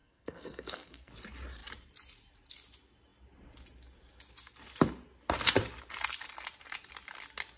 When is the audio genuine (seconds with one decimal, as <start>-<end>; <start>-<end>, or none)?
1.1-7.6